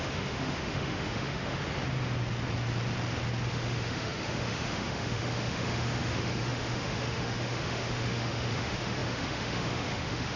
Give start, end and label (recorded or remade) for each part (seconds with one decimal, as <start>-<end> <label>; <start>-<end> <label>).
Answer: 0.0-1.6 remade; 1.6-3.5 recorded; 3.5-10.4 remade